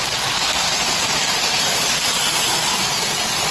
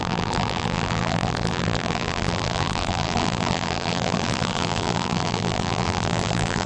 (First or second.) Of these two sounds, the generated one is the second